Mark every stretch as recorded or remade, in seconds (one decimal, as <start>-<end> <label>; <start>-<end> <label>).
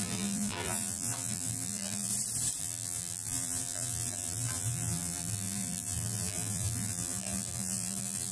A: 0.0-2.1 remade; 2.1-2.6 recorded; 2.6-8.3 remade